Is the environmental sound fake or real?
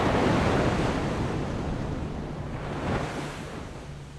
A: real